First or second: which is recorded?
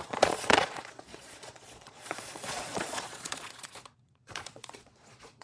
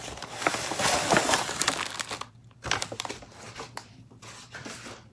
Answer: second